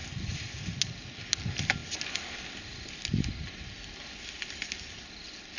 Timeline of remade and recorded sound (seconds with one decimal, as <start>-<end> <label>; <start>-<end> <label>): 0.0-5.6 recorded